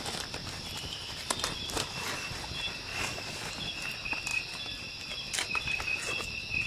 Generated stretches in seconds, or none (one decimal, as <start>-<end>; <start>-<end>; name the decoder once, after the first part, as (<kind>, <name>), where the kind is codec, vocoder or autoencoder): 2.9-3.5 (codec, DAC)